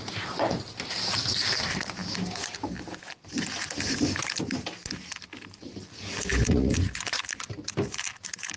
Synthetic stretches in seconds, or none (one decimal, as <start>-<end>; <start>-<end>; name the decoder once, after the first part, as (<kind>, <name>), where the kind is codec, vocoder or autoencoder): 6.3-7.2 (vocoder, Vocos)